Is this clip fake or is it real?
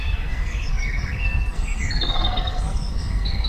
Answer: fake